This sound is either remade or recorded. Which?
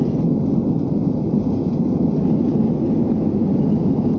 recorded